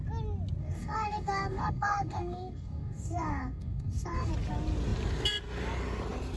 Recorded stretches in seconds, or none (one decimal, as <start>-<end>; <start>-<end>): 0.0-0.6; 4.3-6.4